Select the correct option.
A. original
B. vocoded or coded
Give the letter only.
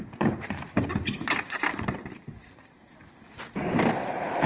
B